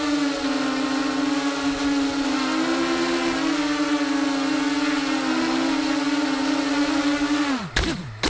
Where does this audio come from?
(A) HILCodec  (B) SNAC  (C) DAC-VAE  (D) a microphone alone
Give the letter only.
D